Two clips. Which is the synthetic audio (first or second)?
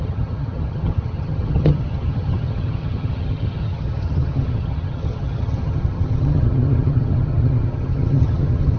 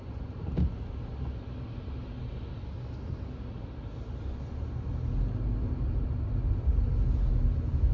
first